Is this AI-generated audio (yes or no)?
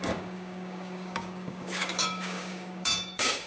yes